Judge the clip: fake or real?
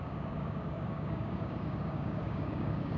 fake